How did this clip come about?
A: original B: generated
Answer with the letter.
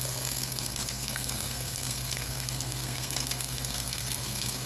B